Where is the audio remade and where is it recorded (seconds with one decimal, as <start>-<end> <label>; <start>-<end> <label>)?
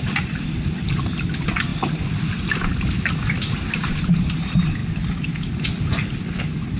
0.0-6.8 recorded